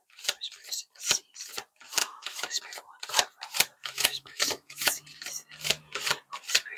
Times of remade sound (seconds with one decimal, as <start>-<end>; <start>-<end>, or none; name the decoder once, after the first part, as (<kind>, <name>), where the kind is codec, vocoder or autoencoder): 2.0-2.6 (autoencoder, DAC-VAE); 3.8-4.9